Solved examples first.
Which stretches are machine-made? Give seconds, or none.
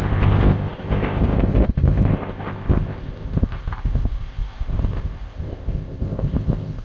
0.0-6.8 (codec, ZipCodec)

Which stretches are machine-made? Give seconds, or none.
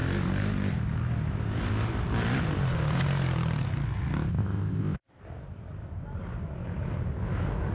4.3-5.2 (codec, ZipCodec)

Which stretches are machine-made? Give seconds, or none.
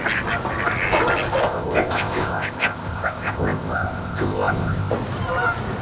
1.4-4.9 (codec, ZipCodec)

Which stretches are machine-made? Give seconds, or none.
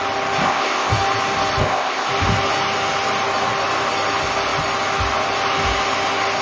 0.4-0.9 (codec, ZipCodec); 1.6-2.1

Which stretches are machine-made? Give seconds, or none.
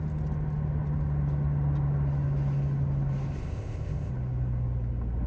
3.4-4.1 (codec, ZipCodec)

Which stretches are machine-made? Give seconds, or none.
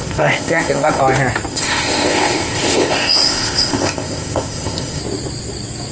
0.0-1.0 (codec, ZipCodec); 1.5-5.0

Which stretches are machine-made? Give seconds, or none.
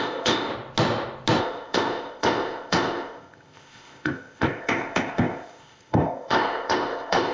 0.0-0.5 (codec, ZipCodec); 1.4-7.3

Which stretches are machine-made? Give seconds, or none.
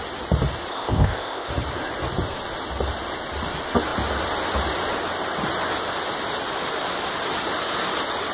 0.7-1.5 (codec, ZipCodec)